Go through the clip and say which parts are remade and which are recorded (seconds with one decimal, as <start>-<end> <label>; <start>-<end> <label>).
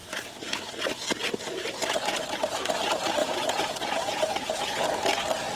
0.0-3.2 recorded; 3.2-4.8 remade; 4.8-5.6 recorded